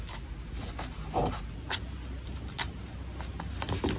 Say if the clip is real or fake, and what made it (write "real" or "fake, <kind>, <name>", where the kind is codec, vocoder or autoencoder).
real